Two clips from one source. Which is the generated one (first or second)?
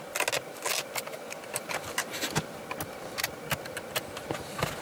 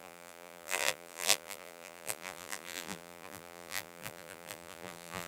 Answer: second